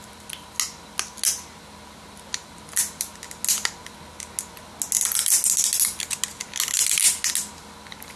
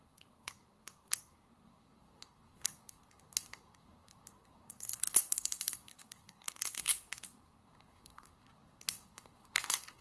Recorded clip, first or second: first